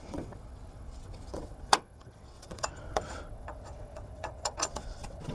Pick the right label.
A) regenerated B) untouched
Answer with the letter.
A